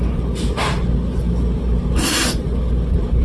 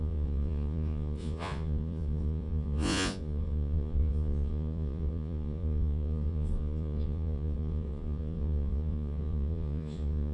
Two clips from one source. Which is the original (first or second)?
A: first